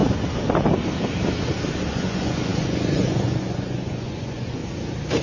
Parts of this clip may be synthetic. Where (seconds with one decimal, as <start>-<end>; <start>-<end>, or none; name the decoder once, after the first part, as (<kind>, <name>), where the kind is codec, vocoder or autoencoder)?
1.9-4.6 (vocoder, Vocos)